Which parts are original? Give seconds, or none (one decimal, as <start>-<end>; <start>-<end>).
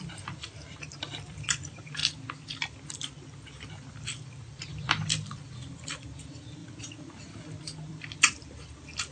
2.0-3.9